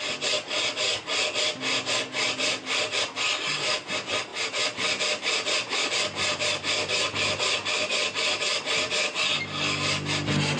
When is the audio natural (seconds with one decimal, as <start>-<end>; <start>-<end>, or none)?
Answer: 0.0-10.6